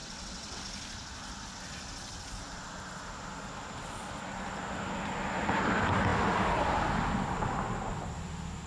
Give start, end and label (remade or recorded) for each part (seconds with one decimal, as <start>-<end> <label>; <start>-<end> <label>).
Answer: 0.0-0.6 remade; 0.6-8.7 recorded